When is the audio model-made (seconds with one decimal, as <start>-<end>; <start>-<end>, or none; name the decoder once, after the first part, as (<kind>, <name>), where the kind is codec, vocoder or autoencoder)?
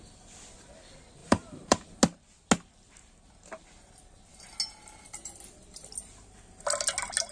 1.2-1.9 (vocoder, BigVGAN v2)